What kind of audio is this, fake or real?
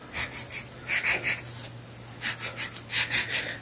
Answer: real